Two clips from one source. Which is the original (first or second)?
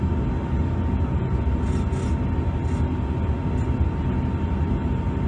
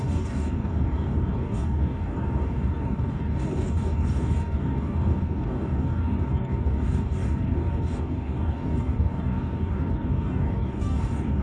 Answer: first